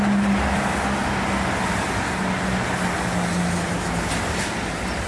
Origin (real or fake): real